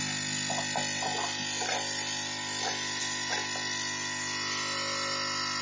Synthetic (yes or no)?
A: no